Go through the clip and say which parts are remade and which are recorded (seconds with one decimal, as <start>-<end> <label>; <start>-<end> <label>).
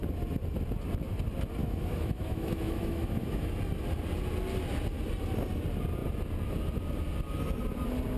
0.0-1.6 recorded; 1.6-3.5 remade; 3.5-8.2 recorded